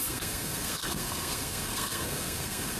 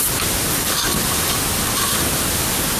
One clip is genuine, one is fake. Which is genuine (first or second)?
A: second